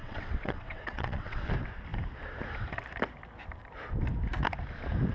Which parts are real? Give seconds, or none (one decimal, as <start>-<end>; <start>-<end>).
1.5-5.1

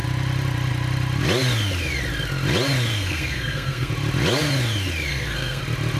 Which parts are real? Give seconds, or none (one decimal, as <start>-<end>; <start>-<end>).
0.0-2.9; 3.9-5.1; 5.6-6.0